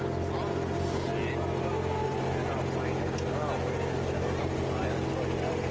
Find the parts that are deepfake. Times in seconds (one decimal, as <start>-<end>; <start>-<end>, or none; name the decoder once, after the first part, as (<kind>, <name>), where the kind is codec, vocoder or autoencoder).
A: none